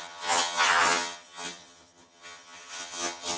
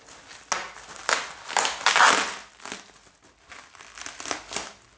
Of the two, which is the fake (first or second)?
first